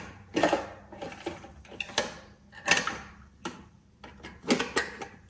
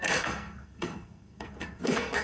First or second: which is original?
first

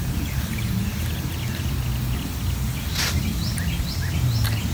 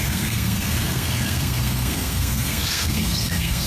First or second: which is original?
first